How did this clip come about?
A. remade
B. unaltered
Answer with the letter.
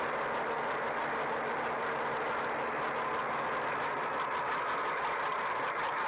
B